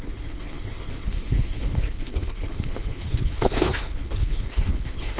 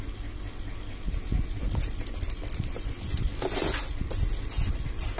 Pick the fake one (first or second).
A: first